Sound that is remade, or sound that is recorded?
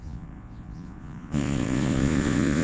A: remade